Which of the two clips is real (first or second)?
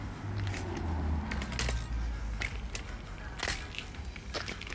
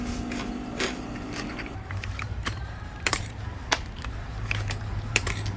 first